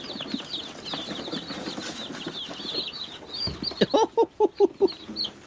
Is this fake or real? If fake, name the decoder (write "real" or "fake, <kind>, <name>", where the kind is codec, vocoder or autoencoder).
real